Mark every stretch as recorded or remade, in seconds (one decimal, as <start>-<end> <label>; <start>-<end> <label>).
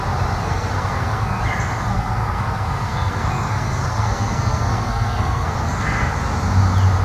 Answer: 0.0-0.4 recorded; 0.4-1.4 remade; 1.4-1.9 recorded; 1.9-6.1 remade; 6.1-7.0 recorded